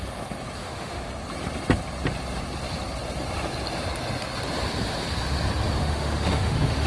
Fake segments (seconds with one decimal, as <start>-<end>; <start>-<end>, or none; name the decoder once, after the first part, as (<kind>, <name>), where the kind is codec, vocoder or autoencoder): 0.6-1.1 (autoencoder, DAC-VAE); 5.8-6.9